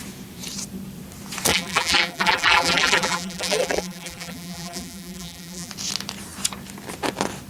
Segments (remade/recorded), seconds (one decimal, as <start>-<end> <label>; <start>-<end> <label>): 0.0-1.5 recorded; 1.5-5.7 remade; 5.7-7.5 recorded